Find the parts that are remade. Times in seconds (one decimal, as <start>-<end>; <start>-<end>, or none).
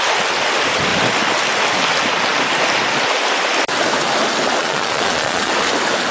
4.6-5.5